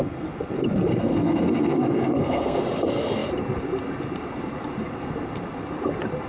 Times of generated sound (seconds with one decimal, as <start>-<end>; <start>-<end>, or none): 0.9-2.6